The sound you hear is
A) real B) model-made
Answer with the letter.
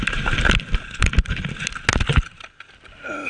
A